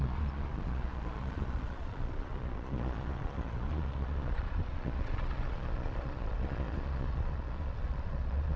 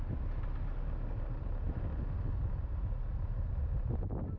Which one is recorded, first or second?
second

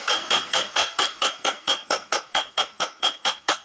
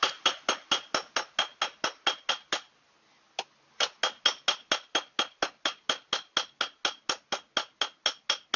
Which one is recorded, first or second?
second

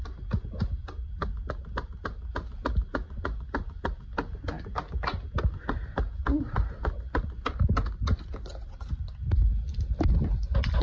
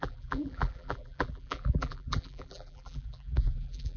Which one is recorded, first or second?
first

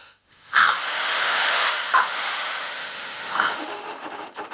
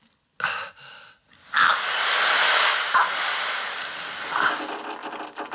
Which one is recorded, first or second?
second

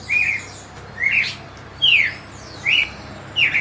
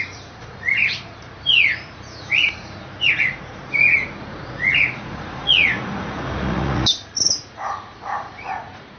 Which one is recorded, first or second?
first